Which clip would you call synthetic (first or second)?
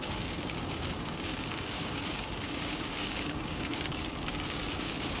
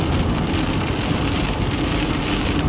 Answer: first